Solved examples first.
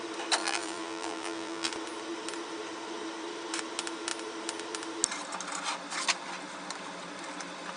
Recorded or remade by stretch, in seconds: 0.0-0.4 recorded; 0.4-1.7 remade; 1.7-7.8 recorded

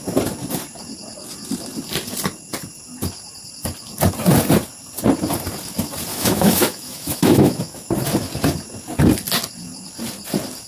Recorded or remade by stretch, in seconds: 0.0-6.1 recorded; 6.1-7.9 remade; 7.9-10.7 recorded

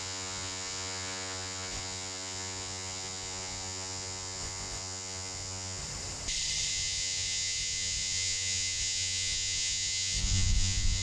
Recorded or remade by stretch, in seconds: 0.0-5.8 remade; 5.8-6.7 recorded; 6.7-11.0 remade

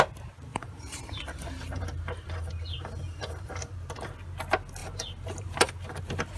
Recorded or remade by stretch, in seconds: 0.0-0.5 recorded; 0.5-3.7 remade; 3.7-4.8 recorded; 4.8-5.7 remade; 5.7-6.4 recorded